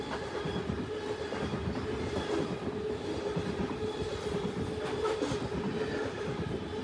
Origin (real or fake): real